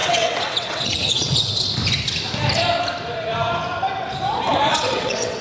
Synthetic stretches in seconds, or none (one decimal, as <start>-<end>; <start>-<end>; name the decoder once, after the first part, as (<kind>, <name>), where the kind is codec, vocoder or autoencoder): 0.0-1.5 (vocoder, WaveNeXt); 4.7-5.4